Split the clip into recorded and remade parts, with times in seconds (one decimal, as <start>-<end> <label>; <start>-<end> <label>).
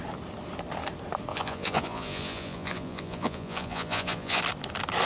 0.0-1.3 recorded; 1.3-4.4 remade; 4.4-5.1 recorded